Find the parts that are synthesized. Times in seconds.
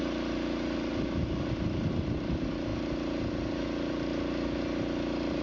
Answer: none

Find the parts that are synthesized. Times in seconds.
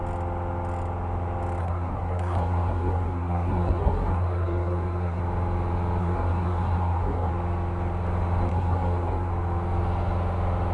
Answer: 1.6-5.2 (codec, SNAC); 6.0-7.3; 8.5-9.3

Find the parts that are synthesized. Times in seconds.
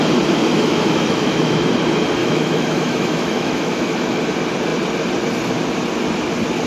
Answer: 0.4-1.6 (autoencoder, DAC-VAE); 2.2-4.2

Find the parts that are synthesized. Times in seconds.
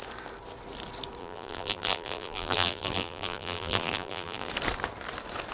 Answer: 1.2-4.5 (vocoder, BigVGAN v2)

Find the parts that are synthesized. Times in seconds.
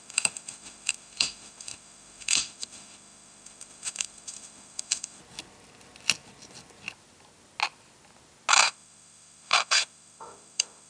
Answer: 0.0-5.2 (autoencoder, DAC-VAE); 8.5-10.9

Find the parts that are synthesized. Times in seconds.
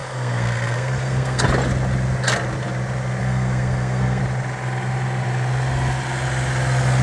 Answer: 0.0-1.4 (codec, SNAC); 3.2-4.2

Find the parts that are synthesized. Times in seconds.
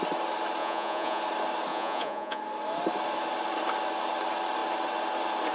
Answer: 0.6-1.2 (vocoder, Vocos); 1.7-2.4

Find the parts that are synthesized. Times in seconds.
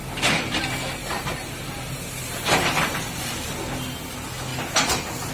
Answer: 1.0-3.4 (vocoder, BigVGAN v2); 4.5-5.3